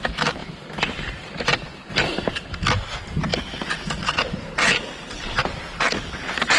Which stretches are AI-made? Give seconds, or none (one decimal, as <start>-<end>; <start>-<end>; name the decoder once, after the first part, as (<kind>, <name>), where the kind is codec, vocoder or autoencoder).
none